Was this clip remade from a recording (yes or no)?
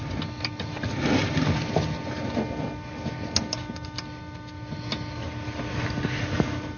no